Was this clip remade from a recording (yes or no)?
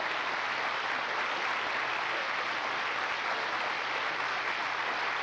no